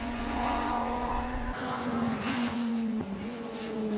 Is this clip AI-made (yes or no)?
yes